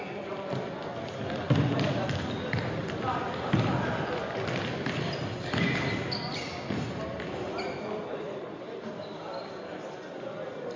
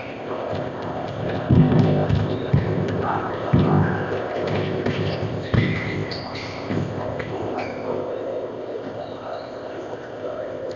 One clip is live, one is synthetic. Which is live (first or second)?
first